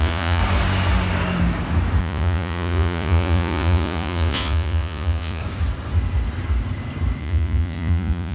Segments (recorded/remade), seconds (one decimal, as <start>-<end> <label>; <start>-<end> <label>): 0.0-0.4 remade; 0.4-2.0 recorded; 2.0-5.4 remade; 5.4-7.2 recorded; 7.2-8.3 remade